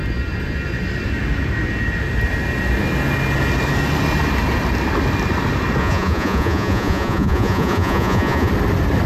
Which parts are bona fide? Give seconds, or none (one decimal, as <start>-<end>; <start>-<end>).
0.0-5.8; 8.5-9.1

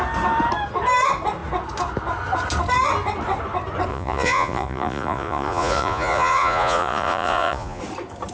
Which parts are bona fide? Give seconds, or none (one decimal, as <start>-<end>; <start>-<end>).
0.0-3.9; 7.8-8.3

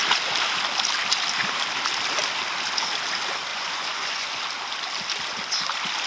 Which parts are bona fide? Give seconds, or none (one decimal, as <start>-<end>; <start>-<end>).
0.0-3.5; 4.4-6.1

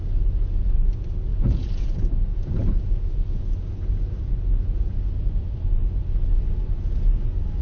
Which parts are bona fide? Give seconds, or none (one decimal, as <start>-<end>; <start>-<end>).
0.0-1.3; 5.7-7.6

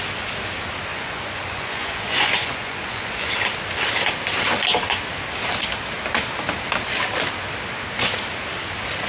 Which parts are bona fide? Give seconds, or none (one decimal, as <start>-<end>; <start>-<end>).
0.0-0.9; 3.3-9.1